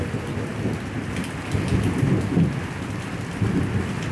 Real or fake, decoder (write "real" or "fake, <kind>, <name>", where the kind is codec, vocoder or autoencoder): real